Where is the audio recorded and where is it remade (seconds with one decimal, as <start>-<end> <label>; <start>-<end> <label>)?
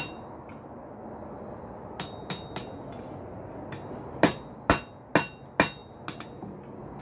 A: 0.0-7.0 recorded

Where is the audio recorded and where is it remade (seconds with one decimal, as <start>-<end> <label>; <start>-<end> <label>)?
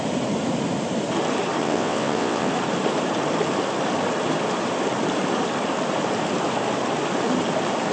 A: 0.0-1.6 recorded; 1.6-2.5 remade; 2.5-7.9 recorded